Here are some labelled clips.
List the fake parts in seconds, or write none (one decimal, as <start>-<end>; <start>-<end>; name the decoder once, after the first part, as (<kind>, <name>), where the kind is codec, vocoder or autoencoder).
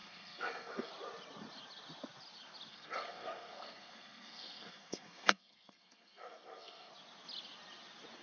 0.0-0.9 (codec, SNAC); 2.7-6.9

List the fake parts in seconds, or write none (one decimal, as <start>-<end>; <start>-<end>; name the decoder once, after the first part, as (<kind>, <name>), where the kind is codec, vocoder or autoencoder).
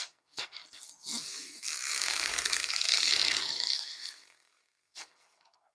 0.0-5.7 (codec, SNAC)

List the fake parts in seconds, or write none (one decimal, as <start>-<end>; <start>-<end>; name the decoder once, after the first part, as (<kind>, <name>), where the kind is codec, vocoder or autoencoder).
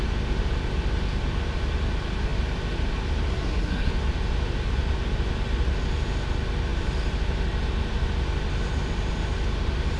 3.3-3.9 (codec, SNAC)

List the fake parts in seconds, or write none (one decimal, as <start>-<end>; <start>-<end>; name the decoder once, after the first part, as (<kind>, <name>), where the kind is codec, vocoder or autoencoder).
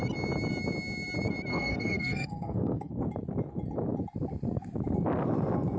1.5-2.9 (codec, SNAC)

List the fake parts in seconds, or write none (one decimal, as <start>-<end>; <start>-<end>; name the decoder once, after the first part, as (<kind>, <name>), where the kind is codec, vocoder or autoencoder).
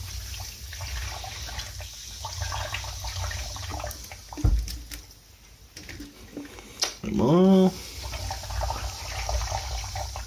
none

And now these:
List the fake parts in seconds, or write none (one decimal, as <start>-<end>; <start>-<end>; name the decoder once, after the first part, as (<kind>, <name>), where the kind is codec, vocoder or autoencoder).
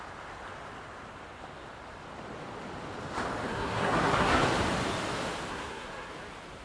3.5-4.4 (codec, SNAC); 5.5-6.1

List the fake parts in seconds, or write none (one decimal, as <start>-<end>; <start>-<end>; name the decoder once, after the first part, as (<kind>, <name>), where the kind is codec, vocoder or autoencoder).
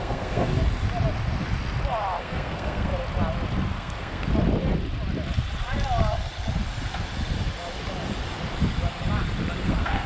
0.0-0.5 (codec, SNAC); 2.2-2.9; 3.7-4.3; 9.6-10.1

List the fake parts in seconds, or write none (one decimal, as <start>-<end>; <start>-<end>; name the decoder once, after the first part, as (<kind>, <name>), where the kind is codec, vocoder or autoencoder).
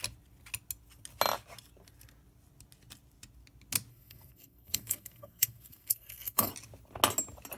3.9-6.5 (codec, SNAC)